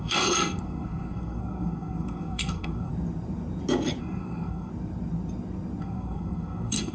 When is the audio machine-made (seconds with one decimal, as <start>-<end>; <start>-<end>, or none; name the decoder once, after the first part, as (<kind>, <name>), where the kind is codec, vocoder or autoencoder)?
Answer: 0.0-2.9 (codec, SNAC); 4.0-4.7; 5.8-6.9